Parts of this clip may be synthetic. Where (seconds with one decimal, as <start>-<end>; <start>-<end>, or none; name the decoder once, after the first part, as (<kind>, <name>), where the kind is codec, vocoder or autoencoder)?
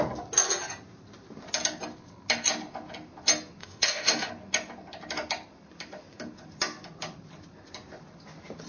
3.6-4.3 (autoencoder, DAC-VAE)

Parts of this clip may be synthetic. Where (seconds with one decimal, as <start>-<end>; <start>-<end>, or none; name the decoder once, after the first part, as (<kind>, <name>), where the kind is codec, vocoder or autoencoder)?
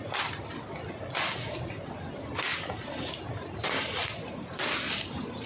0.5-1.4 (vocoder, BigVGAN v2); 2.5-4.3